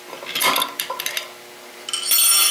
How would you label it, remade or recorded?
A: recorded